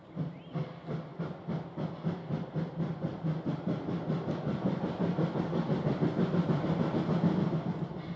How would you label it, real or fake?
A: real